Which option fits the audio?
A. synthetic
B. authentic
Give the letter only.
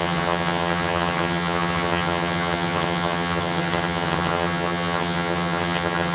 A